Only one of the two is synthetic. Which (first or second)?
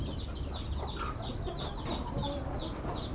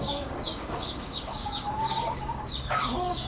second